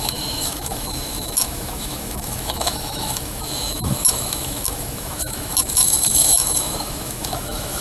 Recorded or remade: remade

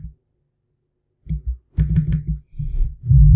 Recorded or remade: recorded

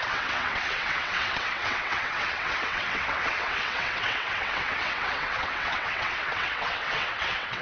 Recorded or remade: remade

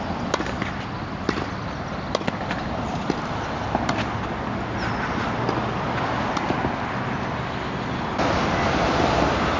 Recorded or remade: recorded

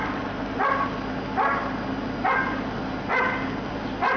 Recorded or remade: recorded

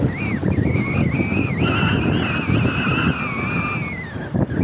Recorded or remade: recorded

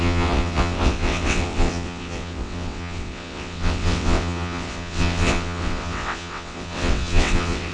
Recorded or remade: remade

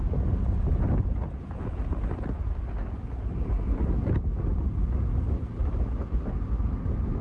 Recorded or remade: recorded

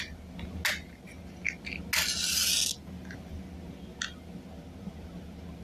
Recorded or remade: recorded